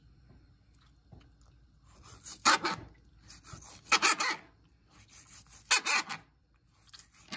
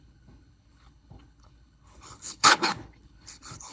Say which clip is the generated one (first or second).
second